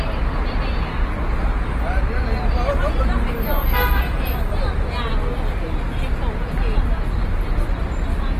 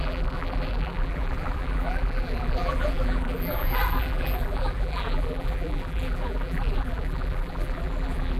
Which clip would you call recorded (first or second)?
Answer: first